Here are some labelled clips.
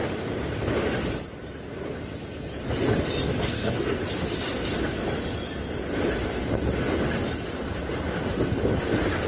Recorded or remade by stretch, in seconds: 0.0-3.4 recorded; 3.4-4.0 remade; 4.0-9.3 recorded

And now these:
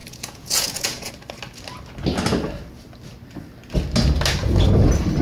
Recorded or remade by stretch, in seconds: 0.0-1.1 remade; 1.1-5.2 recorded

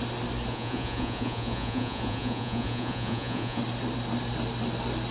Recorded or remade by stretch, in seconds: 0.0-0.5 recorded; 0.5-3.6 remade; 3.6-5.1 recorded